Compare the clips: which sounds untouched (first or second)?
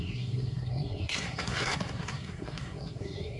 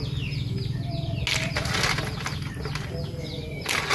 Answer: second